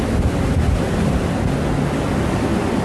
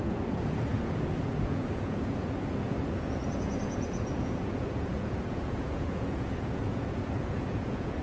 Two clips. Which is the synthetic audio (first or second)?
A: second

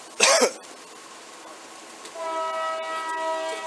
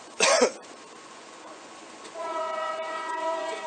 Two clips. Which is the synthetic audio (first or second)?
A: second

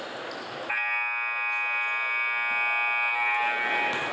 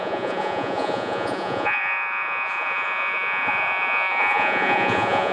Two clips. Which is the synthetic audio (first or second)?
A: second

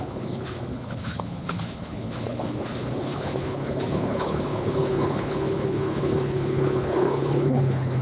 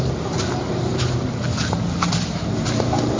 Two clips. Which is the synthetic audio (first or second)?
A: first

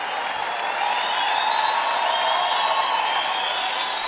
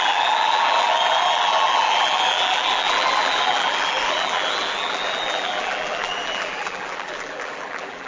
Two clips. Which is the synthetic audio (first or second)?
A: second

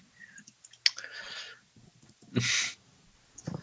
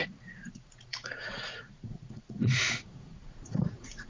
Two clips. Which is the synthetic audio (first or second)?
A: second